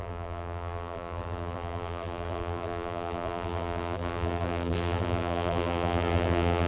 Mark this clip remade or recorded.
remade